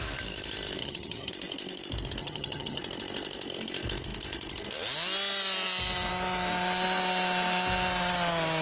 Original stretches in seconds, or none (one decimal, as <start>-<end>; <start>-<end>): 0.0-0.8; 1.3-2.2; 2.8-8.6